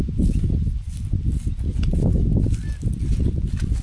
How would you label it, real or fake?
real